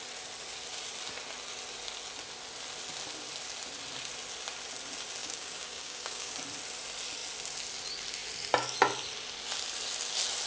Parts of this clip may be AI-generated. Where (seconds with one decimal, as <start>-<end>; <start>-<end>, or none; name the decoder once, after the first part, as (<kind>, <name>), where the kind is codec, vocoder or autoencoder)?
5.2-6.3 (codec, DAC)